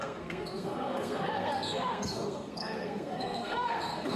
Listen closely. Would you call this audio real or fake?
fake